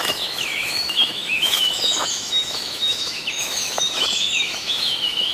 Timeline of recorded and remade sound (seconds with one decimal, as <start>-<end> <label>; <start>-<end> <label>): 0.0-5.3 remade

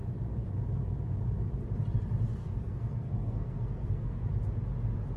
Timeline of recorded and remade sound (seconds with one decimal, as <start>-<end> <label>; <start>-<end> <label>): 0.0-2.4 recorded; 2.4-4.3 remade; 4.3-5.2 recorded